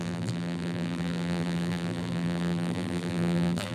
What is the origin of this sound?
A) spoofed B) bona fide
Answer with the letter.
A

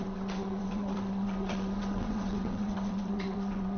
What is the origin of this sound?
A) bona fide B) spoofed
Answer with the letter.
B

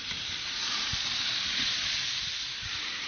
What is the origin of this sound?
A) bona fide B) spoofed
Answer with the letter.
A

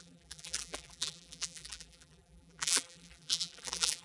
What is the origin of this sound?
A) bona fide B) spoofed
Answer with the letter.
B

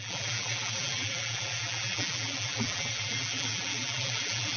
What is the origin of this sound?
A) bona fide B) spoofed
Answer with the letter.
B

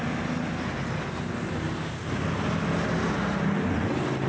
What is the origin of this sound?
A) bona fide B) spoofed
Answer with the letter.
A